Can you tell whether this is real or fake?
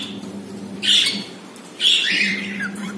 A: fake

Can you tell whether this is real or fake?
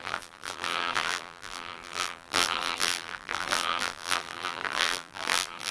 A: fake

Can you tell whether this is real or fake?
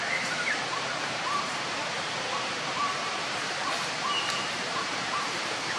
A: fake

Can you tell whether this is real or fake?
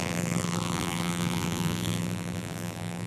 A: fake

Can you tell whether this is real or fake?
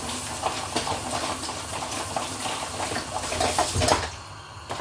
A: real